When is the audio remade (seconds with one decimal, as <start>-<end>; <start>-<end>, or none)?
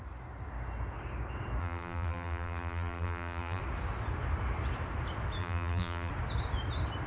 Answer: 1.6-3.6; 5.4-6.1